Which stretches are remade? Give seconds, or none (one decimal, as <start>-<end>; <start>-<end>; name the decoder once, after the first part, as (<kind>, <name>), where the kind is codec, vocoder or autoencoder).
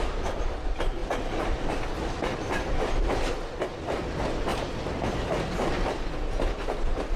none